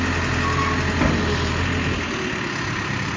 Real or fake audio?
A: real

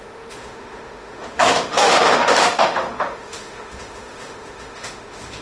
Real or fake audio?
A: fake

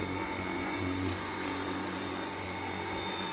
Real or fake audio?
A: fake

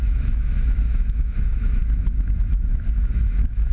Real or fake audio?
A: fake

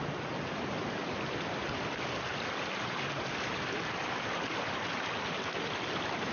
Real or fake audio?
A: real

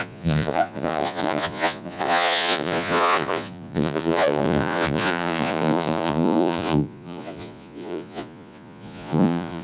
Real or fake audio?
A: fake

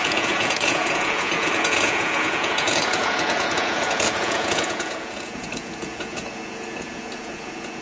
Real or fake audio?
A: fake